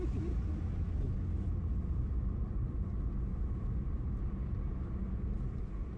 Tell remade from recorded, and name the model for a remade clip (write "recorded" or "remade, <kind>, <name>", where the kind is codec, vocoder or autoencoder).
recorded